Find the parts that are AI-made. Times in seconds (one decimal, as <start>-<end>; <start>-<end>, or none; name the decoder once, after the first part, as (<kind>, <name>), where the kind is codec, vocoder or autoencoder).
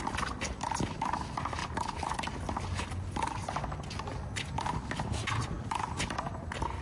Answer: none